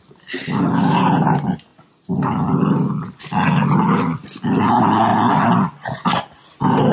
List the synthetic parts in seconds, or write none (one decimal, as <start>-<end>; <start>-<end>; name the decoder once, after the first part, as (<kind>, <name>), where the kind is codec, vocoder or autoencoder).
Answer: none